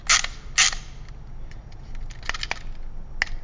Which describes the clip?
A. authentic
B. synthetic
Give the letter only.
A